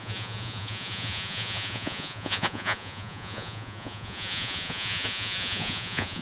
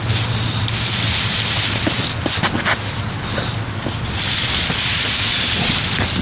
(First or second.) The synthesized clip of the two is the first